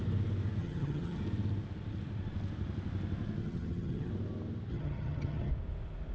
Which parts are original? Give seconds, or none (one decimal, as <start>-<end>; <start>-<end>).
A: 0.0-0.6; 1.2-3.4; 4.1-4.7; 5.5-6.1